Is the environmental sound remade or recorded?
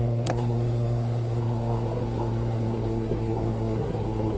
remade